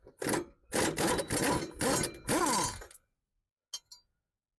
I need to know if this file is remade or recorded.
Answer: recorded